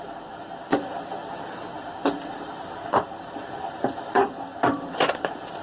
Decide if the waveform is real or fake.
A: fake